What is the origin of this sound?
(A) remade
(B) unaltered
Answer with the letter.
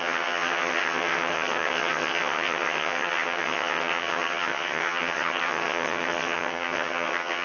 A